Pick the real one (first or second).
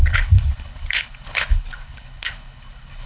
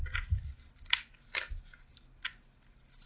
second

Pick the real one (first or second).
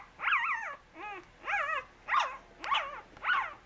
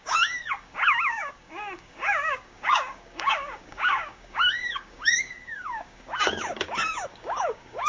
first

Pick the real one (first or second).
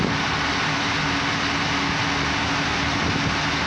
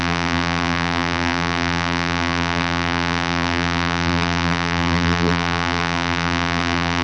first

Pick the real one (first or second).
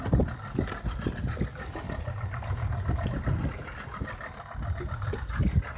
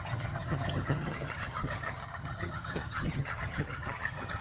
first